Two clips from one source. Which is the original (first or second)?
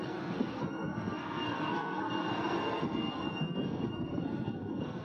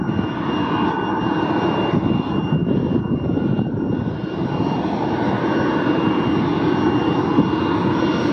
second